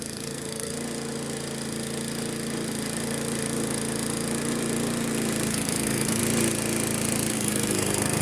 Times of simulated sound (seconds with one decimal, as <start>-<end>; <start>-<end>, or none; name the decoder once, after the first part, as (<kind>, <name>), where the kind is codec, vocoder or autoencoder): 0.0-0.7 (codec, SNAC); 5.5-6.2; 7.3-8.2